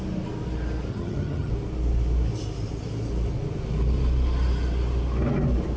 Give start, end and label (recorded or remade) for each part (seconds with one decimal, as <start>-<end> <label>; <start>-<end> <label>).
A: 0.0-0.9 recorded; 0.9-1.5 remade; 1.5-5.8 recorded